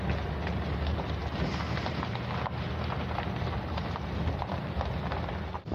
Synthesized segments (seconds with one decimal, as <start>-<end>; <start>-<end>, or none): none